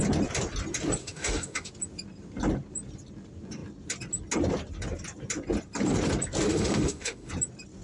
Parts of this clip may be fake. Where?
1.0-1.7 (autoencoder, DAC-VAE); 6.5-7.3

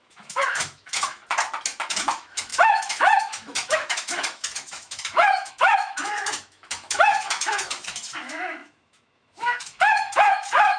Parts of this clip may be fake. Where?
0.0-1.2 (autoencoder, DAC-VAE); 1.8-10.8

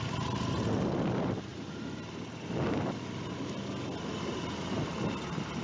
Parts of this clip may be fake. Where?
none

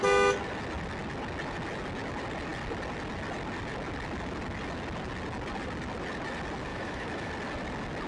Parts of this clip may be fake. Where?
6.7-7.3 (autoencoder, DAC-VAE)

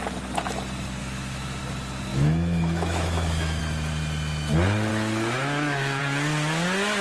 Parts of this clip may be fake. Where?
1.0-1.6 (autoencoder, DAC-VAE); 2.1-3.6; 4.9-6.0

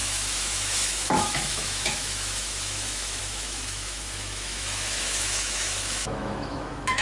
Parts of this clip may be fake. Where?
0.0-7.0 (autoencoder, DAC-VAE)

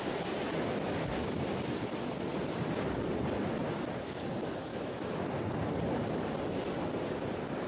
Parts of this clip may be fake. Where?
4.7-5.3 (autoencoder, DAC-VAE)

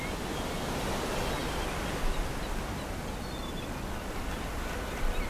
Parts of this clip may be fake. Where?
none